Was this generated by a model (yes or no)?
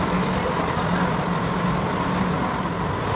no